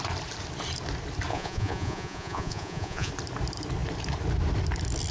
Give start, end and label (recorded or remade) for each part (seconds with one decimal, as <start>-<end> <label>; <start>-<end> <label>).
0.0-1.3 recorded; 1.3-3.1 remade; 3.1-5.1 recorded